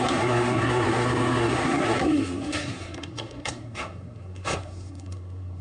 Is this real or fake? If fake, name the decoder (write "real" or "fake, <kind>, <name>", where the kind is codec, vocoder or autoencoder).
fake, codec, SNAC